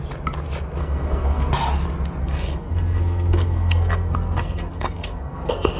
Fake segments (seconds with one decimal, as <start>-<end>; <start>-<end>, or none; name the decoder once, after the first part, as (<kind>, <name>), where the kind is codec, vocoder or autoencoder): 0.8-1.5 (codec, SNAC); 2.2-5.8